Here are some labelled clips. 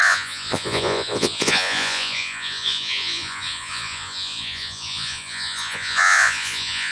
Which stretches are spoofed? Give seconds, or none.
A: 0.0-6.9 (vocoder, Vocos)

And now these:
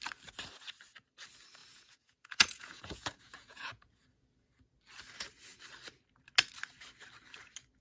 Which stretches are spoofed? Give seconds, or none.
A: 1.6-4.5 (vocoder, Vocos)

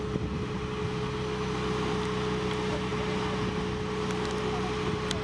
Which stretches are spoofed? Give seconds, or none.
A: none

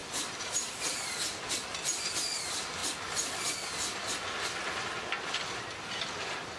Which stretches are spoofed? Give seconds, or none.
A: none